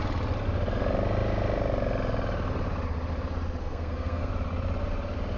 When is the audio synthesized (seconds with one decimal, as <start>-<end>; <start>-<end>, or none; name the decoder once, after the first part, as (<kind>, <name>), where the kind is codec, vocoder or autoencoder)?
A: 3.6-4.3 (codec, SNAC)